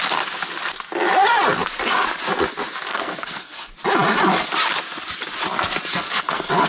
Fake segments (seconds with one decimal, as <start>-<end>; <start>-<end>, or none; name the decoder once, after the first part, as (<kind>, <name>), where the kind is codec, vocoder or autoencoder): 2.9-3.7 (codec, SNAC); 5.9-6.7